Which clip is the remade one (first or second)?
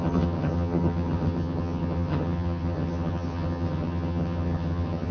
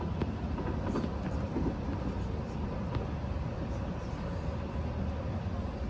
first